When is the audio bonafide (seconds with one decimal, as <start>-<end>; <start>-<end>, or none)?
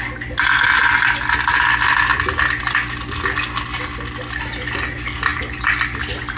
0.0-5.3; 6.0-6.4